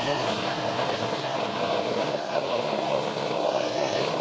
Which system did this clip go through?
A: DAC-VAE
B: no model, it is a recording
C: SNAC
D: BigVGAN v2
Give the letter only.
C